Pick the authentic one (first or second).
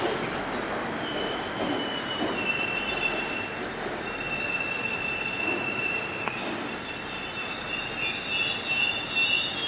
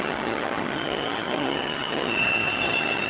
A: first